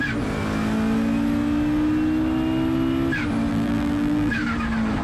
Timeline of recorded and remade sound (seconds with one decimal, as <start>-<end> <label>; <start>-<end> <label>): 0.0-3.5 recorded; 3.5-4.3 remade; 4.3-5.0 recorded